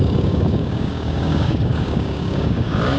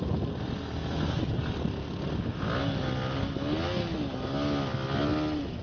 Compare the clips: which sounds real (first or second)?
second